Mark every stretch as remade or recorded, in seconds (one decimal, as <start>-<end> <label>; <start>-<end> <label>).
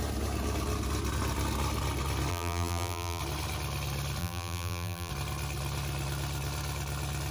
0.0-2.3 recorded; 2.3-3.2 remade; 3.2-4.2 recorded; 4.2-5.1 remade; 5.1-7.3 recorded